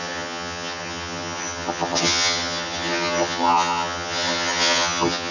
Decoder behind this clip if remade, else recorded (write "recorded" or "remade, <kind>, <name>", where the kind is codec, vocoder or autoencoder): remade, vocoder, HiFi-GAN